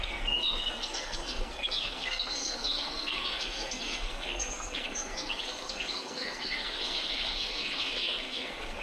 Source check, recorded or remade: remade